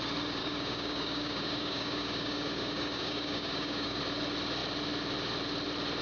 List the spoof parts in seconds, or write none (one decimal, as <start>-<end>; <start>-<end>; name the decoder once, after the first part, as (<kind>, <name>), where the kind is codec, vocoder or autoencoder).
0.4-4.0 (codec, DAC)